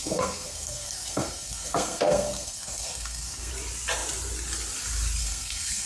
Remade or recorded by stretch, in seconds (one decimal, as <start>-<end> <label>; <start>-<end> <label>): 0.0-3.5 remade; 3.5-5.2 recorded; 5.2-5.9 remade